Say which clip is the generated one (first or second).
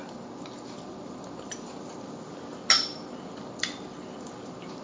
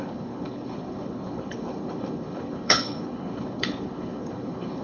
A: second